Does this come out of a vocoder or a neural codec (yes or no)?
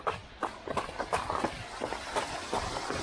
no